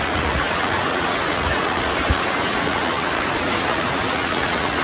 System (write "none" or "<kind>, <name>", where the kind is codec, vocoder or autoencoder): vocoder, Vocos